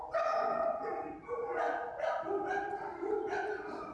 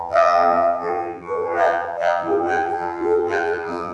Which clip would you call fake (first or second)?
second